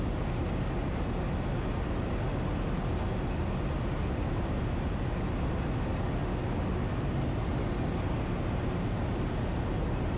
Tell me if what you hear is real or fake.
real